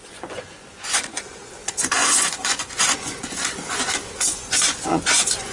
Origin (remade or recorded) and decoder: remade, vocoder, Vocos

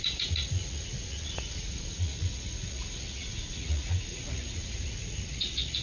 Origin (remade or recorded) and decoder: remade, vocoder, Vocos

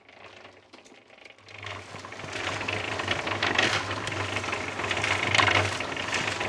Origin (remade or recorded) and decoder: recorded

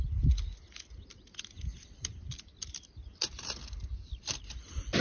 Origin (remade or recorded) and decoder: recorded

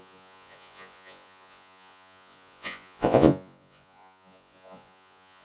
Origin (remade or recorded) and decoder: remade, vocoder, Vocos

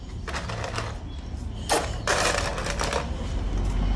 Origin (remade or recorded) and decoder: recorded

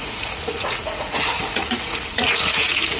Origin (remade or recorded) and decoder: remade, vocoder, Vocos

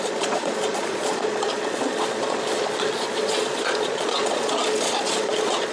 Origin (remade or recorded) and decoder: remade, vocoder, Vocos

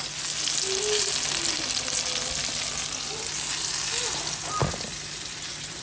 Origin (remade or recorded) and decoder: recorded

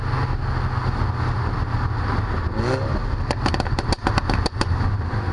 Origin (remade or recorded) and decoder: recorded